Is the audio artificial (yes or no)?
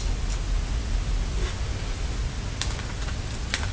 no